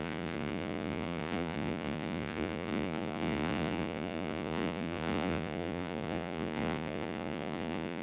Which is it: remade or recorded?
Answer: remade